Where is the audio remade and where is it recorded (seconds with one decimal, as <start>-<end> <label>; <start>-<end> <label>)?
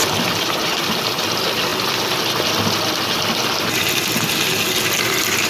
0.0-1.7 remade; 1.7-5.0 recorded; 5.0-5.5 remade